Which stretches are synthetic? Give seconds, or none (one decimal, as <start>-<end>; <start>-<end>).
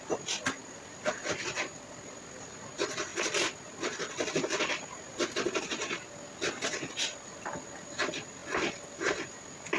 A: 0.6-2.7; 3.1-5.6; 8.4-9.8